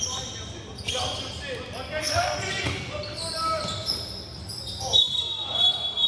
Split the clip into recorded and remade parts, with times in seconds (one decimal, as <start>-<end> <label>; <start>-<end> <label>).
0.0-2.0 recorded; 2.0-2.9 remade; 2.9-6.1 recorded